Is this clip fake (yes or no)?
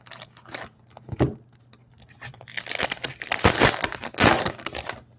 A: no